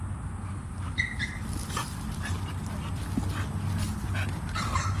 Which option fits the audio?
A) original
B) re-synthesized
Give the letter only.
A